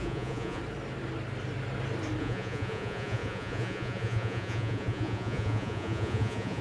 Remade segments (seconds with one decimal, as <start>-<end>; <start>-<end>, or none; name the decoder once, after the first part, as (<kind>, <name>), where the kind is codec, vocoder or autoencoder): 0.0-0.6 (vocoder, Vocos); 2.2-6.6